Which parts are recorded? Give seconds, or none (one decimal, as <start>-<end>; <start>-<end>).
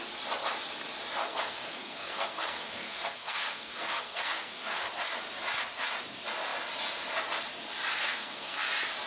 0.0-1.2; 4.9-7.9; 8.7-9.1